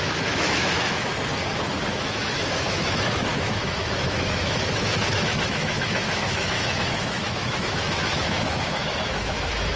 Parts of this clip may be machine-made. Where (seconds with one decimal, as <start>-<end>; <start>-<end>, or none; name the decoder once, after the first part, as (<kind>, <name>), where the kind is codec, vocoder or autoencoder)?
0.0-1.1 (autoencoder, DAC-VAE); 1.9-9.8